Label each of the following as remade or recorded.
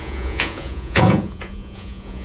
remade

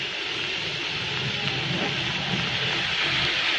recorded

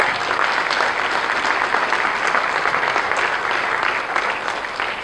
recorded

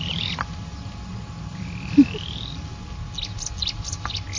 recorded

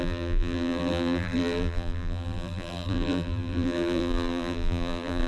remade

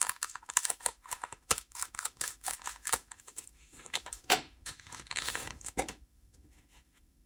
remade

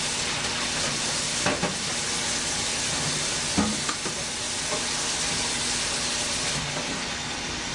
recorded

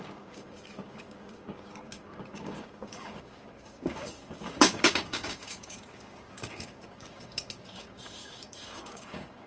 remade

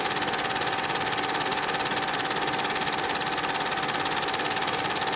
recorded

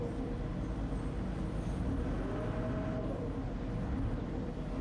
recorded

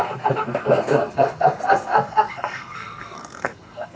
remade